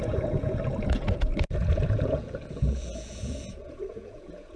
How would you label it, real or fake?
fake